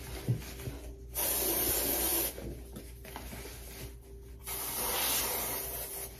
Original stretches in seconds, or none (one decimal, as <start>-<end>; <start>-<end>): 0.0-6.2